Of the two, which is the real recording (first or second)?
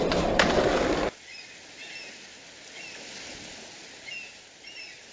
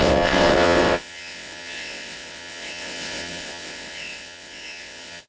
first